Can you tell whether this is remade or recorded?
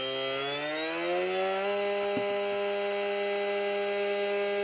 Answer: recorded